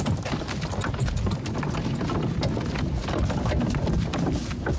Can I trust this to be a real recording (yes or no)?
yes